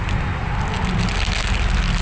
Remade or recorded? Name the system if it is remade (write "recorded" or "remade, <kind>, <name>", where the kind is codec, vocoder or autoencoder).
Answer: recorded